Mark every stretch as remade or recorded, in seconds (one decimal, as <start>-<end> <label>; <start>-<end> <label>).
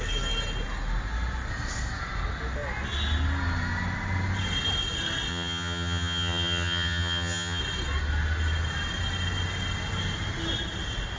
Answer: 0.0-5.3 recorded; 5.3-7.6 remade; 7.6-11.2 recorded